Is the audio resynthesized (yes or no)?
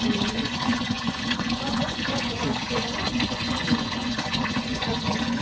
yes